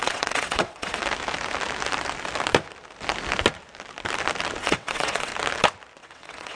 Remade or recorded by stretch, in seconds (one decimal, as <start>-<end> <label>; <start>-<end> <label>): 0.0-1.0 remade; 1.0-4.6 recorded; 4.6-5.3 remade; 5.3-6.0 recorded; 6.0-6.6 remade